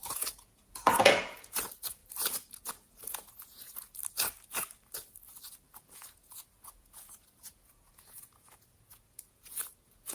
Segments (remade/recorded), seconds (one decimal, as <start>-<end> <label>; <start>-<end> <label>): 0.0-2.0 remade; 2.0-2.5 recorded; 2.5-4.0 remade; 4.0-5.8 recorded; 5.8-10.1 remade